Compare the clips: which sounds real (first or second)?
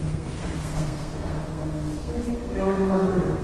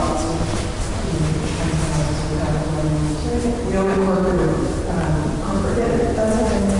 second